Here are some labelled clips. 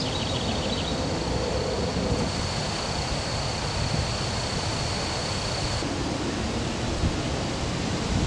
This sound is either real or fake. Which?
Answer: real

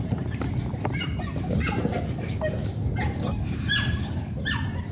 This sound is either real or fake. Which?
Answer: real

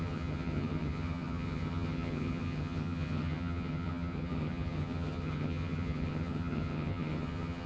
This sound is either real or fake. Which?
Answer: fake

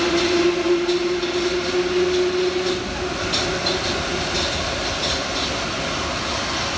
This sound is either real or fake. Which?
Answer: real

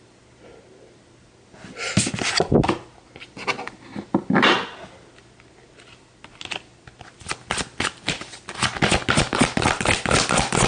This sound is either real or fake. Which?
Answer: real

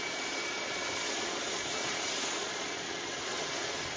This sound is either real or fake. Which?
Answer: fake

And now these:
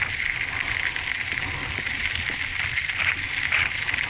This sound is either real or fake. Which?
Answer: real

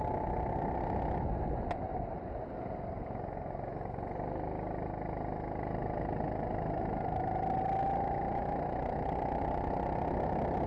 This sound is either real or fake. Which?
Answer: real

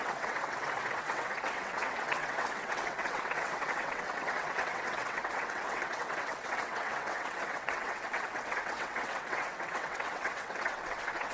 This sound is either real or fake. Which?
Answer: fake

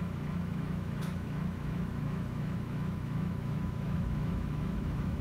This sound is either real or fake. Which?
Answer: fake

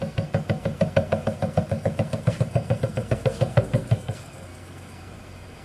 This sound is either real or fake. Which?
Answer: fake